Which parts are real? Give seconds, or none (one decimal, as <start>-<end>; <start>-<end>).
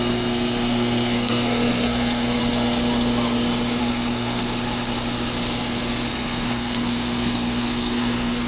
2.4-3.8; 4.4-6.1